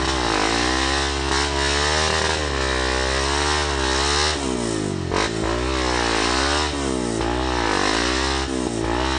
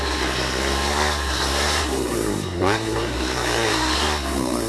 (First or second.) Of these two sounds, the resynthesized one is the second